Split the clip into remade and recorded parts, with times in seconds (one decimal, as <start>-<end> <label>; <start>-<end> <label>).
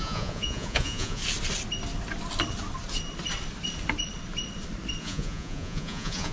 0.0-1.2 remade; 1.2-5.0 recorded; 5.0-6.3 remade